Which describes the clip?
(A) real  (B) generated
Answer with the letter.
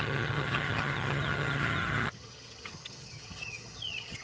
B